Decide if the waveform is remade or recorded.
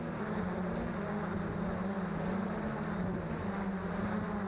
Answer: recorded